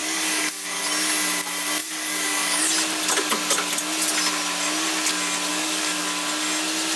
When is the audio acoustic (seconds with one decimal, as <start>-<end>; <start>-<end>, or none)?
0.8-1.8; 2.6-5.5; 6.0-7.0